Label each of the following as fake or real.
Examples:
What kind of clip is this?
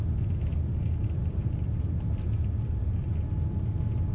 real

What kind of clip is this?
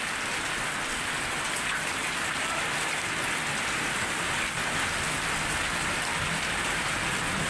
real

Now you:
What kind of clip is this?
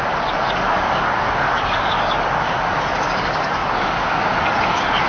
fake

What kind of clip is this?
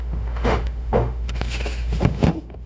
fake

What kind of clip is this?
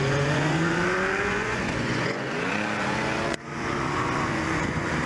fake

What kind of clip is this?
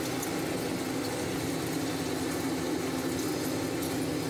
real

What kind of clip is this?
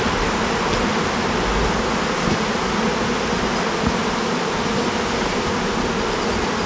real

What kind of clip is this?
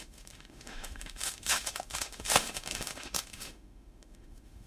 fake